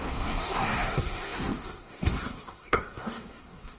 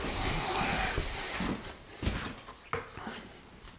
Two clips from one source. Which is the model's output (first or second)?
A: first